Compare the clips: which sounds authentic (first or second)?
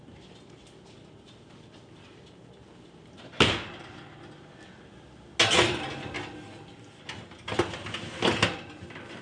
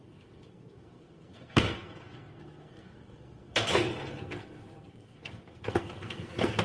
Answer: first